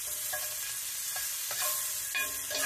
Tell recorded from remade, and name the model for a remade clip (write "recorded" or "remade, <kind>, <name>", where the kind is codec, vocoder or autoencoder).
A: recorded